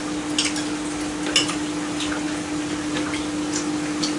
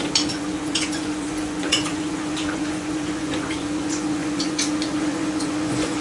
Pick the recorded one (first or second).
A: first